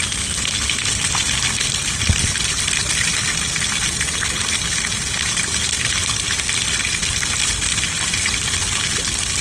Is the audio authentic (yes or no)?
yes